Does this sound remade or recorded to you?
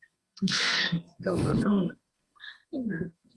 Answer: remade